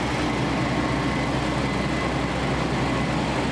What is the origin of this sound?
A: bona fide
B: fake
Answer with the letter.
A